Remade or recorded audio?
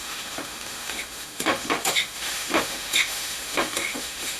remade